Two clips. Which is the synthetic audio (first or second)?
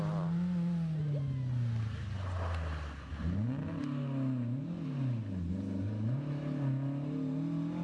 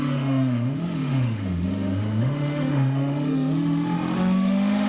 second